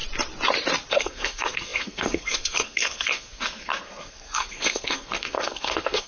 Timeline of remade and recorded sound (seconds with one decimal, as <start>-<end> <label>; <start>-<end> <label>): 0.0-0.9 recorded; 0.9-6.1 remade